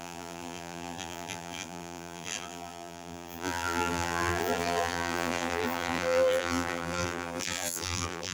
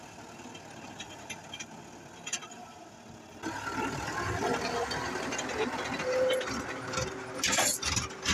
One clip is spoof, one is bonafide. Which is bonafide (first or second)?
second